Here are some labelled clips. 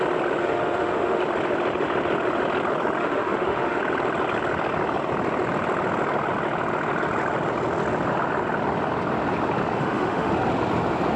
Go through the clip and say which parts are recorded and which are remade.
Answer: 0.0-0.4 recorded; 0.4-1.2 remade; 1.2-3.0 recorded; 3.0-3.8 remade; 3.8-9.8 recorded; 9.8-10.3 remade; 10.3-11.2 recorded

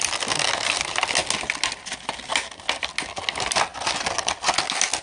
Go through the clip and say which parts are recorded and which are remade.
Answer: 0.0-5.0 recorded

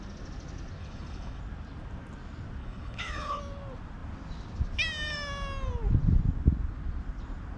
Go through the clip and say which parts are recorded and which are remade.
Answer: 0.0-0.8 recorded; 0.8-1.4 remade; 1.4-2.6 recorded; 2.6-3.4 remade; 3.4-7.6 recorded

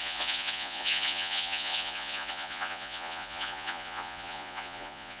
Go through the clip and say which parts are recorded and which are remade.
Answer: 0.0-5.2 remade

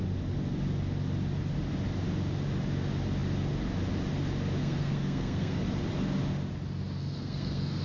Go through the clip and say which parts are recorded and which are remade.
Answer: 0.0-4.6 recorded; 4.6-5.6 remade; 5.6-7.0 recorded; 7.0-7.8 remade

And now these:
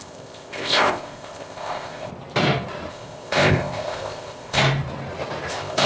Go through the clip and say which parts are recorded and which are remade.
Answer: 0.0-2.1 remade; 2.1-2.9 recorded; 2.9-4.6 remade; 4.6-5.5 recorded; 5.5-5.9 remade

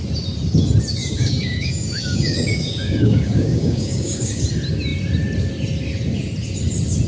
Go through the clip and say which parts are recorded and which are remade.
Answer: 0.0-1.0 recorded; 1.0-4.4 remade; 4.4-7.1 recorded